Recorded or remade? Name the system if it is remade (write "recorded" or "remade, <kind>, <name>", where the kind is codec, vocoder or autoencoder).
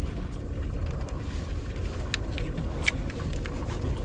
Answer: recorded